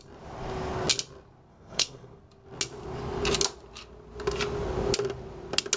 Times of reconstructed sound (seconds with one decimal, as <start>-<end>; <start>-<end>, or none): 1.5-2.2

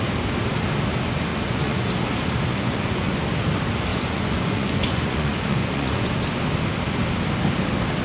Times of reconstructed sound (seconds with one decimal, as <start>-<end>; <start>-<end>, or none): 1.3-1.9; 2.5-3.2; 3.9-6.1

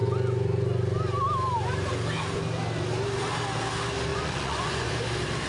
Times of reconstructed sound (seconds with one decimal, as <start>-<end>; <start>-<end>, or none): 4.1-4.9

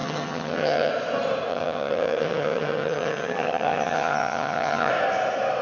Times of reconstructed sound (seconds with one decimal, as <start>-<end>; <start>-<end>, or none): 0.0-0.9; 1.5-4.9